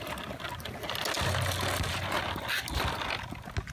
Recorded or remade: recorded